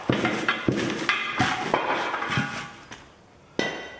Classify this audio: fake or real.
real